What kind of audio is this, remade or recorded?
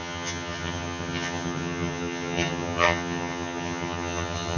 remade